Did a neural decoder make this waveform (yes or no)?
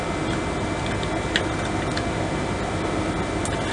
no